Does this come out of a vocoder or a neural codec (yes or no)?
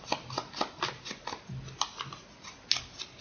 no